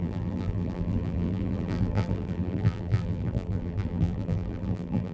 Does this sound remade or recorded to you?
remade